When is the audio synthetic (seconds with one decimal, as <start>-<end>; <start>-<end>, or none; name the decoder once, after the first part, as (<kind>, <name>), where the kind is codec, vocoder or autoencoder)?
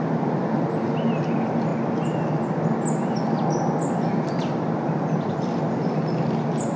none